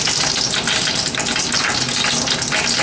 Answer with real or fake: real